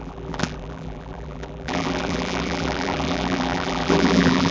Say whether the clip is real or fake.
fake